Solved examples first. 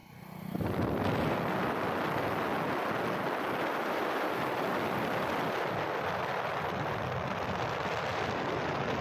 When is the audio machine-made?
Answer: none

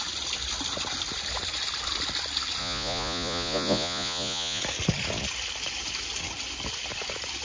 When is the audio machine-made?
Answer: 2.6-4.6 (vocoder, Vocos)

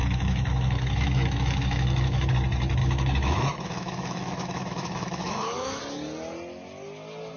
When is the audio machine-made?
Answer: 0.0-2.3 (autoencoder, DAC-VAE); 2.8-5.8

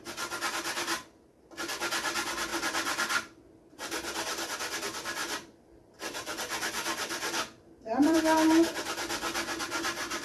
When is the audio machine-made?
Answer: 2.5-3.6 (vocoder, BigVGAN v2); 5.2-8.2

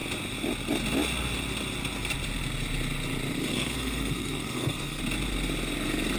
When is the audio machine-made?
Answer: 3.4-5.0 (codec, SNAC)

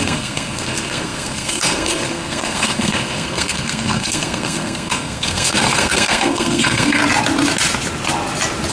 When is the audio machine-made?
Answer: 0.0-7.0 (codec, SNAC)

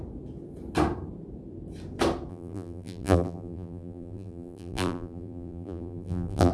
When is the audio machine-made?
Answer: 2.3-6.5 (vocoder, BigVGAN v2)

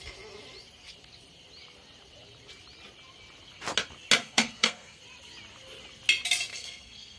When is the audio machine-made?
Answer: 4.2-5.0 (codec, SNAC); 6.5-7.2